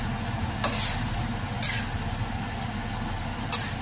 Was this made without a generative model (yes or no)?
yes